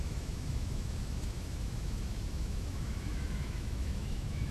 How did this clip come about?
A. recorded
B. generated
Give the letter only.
B